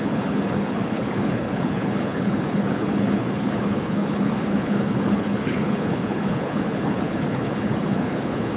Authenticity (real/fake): fake